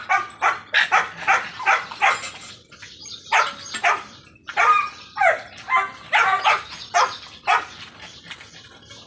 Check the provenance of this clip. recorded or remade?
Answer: recorded